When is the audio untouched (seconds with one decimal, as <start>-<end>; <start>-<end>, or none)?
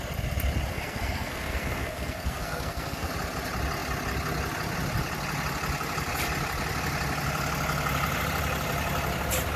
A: 0.0-0.7; 3.1-9.6